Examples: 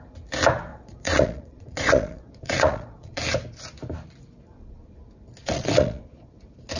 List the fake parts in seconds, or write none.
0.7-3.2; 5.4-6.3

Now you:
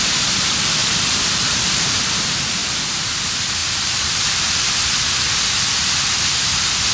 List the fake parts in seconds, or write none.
0.8-2.1; 2.6-3.2; 3.6-4.7

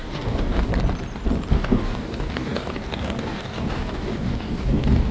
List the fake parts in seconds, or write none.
0.0-0.7; 1.5-5.1

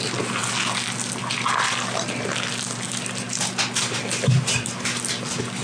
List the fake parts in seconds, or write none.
none